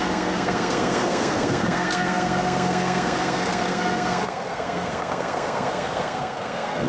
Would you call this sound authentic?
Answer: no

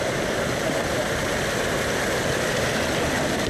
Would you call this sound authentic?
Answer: yes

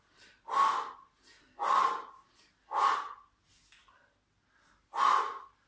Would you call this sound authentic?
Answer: yes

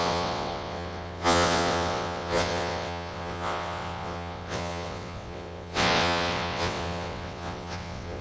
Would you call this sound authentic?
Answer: no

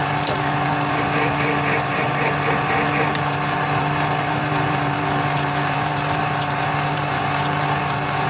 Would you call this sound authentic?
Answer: no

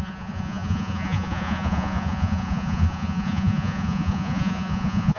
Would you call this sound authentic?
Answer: no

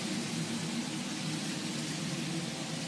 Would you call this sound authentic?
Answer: yes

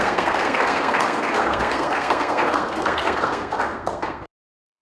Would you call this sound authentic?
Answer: no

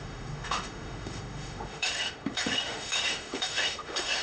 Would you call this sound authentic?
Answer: no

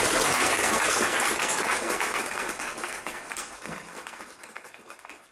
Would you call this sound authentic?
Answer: no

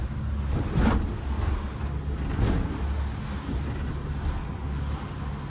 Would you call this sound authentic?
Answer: yes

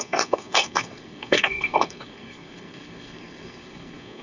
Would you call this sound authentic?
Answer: no